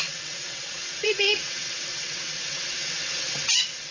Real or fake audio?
fake